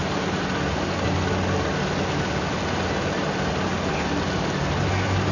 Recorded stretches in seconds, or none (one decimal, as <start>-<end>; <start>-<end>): 0.0-5.3